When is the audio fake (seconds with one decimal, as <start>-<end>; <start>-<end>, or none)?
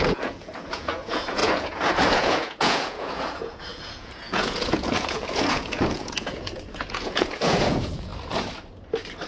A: 0.0-8.1